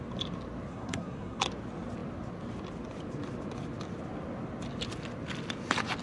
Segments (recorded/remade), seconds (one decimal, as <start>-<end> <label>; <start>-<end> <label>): 0.0-0.7 recorded; 0.7-1.4 remade; 1.4-6.0 recorded